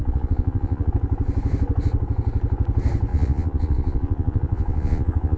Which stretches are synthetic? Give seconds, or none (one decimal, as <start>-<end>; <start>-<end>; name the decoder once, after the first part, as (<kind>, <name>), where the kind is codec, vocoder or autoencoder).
0.0-0.9 (vocoder, Vocos); 3.1-5.4